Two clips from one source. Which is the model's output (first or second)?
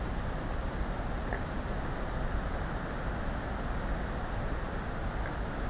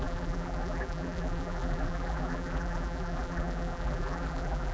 second